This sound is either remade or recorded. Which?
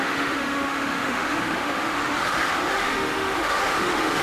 remade